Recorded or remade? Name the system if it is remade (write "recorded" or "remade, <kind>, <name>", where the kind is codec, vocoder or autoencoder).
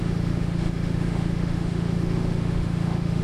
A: remade, autoencoder, DAC-VAE